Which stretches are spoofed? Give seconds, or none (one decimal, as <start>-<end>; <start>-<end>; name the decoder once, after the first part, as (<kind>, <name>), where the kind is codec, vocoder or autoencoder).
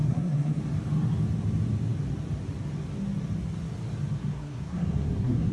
0.0-0.6 (codec, SNAC); 4.2-5.5